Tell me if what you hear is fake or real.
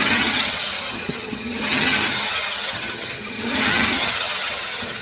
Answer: fake